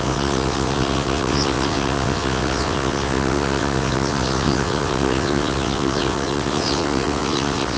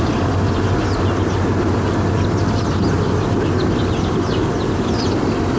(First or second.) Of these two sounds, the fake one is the first